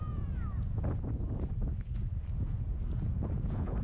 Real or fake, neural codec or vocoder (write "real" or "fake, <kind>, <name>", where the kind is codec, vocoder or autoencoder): fake, vocoder, Vocos